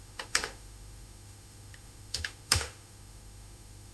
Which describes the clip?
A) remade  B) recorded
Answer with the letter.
A